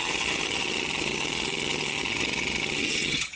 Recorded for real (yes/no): no